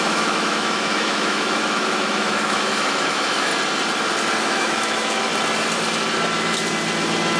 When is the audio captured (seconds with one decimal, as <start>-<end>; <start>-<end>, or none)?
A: 3.5-4.4; 5.3-7.4